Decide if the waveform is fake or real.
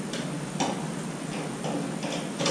real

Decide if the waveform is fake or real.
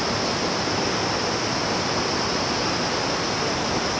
real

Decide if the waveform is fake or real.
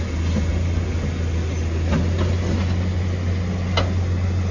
real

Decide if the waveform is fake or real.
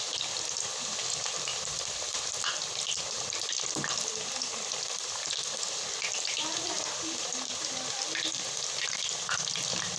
real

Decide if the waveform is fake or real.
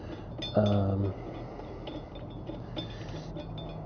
real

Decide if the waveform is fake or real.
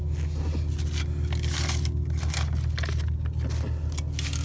real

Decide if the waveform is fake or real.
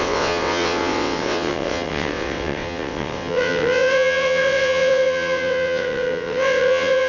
fake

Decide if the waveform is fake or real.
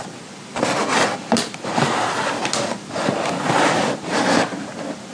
real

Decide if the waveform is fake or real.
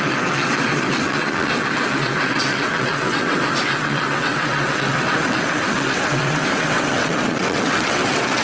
fake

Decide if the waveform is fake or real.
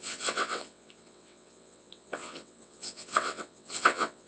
fake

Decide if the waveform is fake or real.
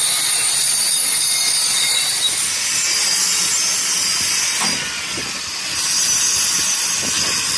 real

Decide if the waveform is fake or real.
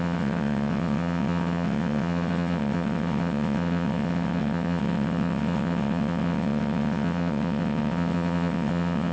fake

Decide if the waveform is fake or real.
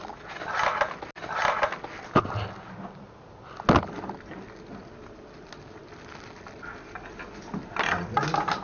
real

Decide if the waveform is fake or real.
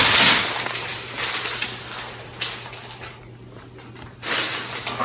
real